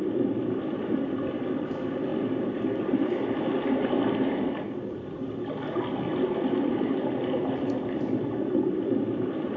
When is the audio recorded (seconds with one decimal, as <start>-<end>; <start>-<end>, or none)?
2.1-7.0